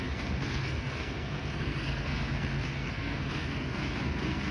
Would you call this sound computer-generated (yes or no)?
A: yes